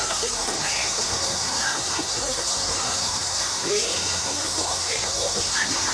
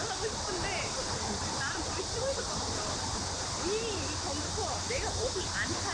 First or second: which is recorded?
second